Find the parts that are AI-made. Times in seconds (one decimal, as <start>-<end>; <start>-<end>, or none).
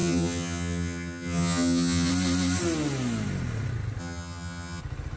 0.0-2.1; 4.0-4.8